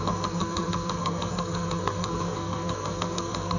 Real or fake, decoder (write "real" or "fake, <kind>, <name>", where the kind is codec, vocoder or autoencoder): fake, codec, SNAC